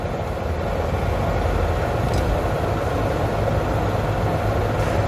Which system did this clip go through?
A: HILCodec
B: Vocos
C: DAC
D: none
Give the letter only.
D